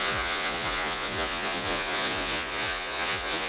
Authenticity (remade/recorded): remade